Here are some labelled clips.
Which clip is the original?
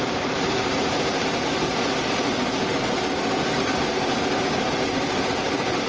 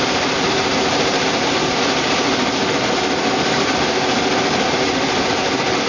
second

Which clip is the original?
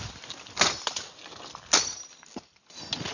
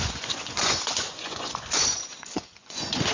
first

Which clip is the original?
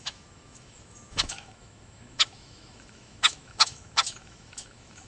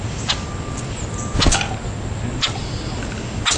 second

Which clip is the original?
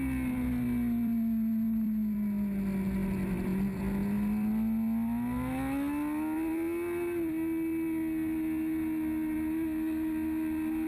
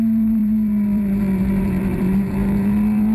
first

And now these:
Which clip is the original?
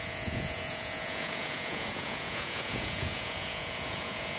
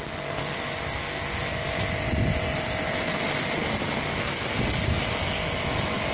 second